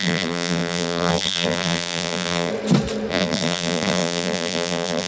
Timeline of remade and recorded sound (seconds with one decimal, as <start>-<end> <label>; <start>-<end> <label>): 0.0-2.5 remade; 2.5-3.1 recorded; 3.1-5.1 remade